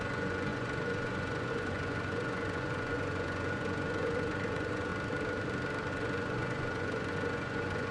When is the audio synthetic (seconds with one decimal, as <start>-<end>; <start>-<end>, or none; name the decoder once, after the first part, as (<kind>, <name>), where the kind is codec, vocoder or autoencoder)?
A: 0.0-4.9 (vocoder, Vocos); 5.9-7.9